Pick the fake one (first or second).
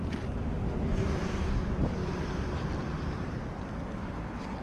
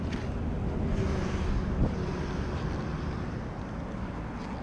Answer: first